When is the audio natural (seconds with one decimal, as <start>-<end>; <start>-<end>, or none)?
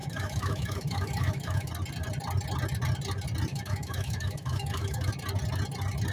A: 1.7-3.5; 5.1-6.1